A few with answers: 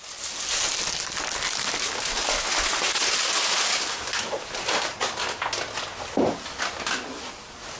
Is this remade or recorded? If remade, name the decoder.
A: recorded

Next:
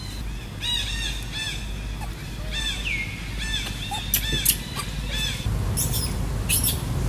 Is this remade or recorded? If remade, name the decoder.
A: recorded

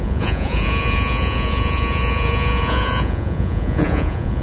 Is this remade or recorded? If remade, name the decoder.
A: remade, vocoder, Vocos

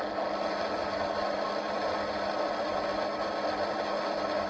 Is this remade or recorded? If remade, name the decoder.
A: recorded